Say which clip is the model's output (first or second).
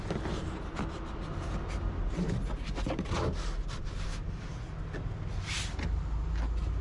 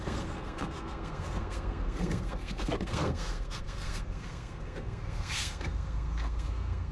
second